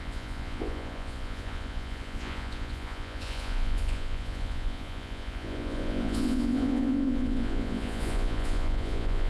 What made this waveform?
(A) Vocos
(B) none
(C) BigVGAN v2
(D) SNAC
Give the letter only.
A